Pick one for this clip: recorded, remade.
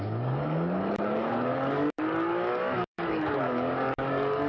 remade